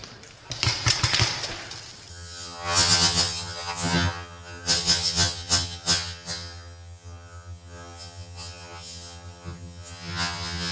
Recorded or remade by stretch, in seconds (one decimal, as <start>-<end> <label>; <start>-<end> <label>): 0.0-2.1 recorded; 2.1-10.7 remade